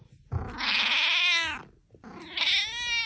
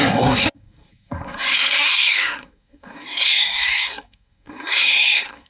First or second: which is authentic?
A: first